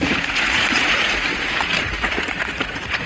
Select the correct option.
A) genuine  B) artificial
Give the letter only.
B